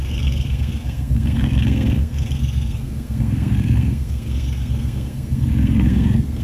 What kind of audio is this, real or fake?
fake